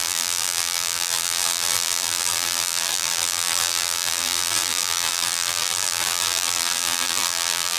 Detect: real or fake fake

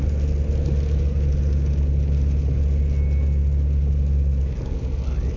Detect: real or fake real